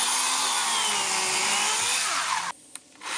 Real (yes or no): yes